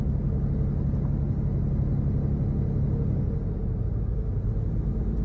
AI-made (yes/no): no